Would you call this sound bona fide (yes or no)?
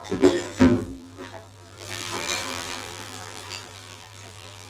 no